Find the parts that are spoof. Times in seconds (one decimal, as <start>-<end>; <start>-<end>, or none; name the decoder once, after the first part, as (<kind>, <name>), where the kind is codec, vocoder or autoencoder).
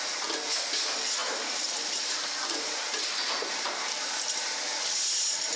1.2-4.6 (vocoder, BigVGAN v2)